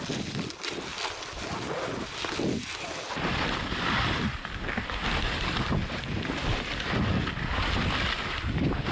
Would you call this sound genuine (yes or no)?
yes